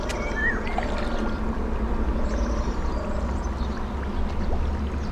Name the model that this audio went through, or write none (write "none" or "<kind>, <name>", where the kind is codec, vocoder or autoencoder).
none